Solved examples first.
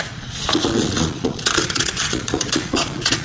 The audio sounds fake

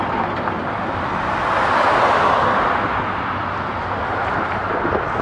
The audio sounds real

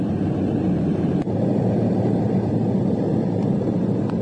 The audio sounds fake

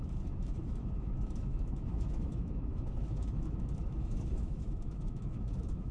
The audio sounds fake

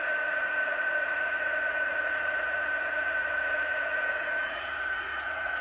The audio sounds fake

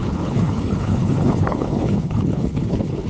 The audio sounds fake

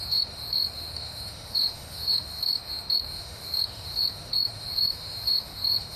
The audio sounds fake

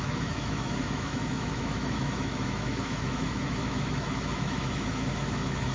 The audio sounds fake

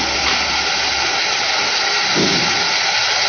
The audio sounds real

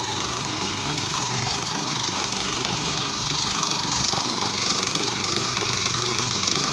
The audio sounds fake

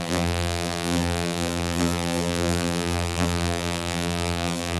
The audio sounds fake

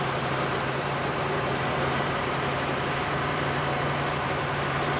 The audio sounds fake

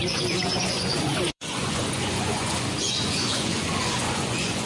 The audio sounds fake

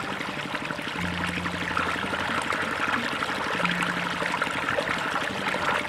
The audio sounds real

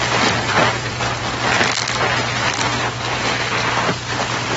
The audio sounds real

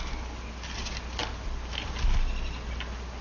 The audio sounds real